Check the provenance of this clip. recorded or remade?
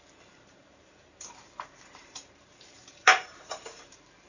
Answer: remade